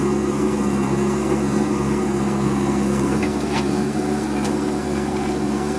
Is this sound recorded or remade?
remade